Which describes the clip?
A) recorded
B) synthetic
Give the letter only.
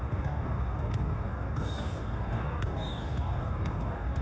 B